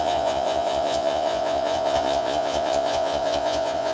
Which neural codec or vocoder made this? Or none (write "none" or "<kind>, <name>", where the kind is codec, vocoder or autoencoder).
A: vocoder, Vocos